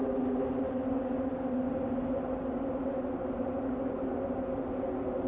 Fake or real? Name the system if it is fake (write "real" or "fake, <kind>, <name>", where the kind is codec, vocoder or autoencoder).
real